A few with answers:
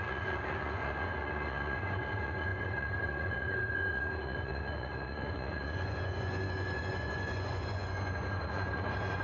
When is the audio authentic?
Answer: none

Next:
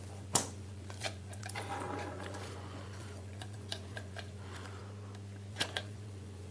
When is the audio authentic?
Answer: 4.8-5.5